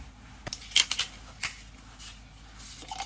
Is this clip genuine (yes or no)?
yes